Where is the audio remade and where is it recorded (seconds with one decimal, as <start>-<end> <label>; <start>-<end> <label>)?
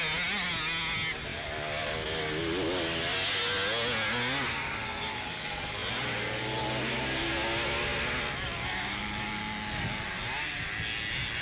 0.0-11.4 recorded